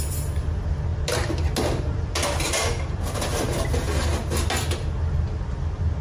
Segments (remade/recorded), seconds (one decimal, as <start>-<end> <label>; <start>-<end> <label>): 0.0-6.0 recorded